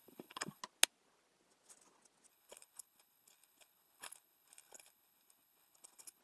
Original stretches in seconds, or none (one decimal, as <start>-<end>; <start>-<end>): 0.6-2.3